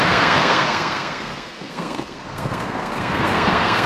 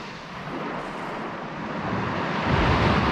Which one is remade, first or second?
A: first